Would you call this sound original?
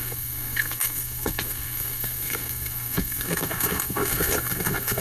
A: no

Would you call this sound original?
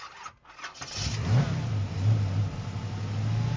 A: yes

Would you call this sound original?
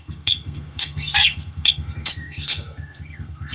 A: no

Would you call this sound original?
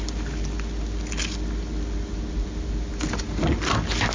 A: yes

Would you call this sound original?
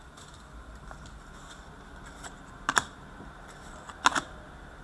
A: yes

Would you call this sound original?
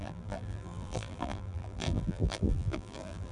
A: no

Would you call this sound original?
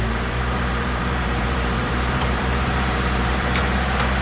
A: no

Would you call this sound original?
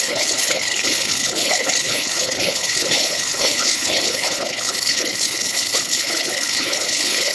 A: no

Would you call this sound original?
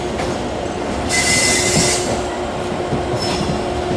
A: yes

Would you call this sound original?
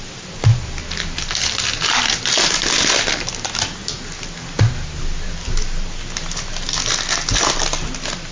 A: yes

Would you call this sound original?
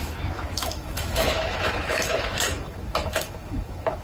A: no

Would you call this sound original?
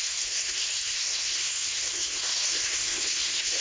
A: no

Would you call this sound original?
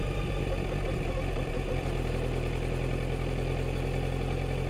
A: yes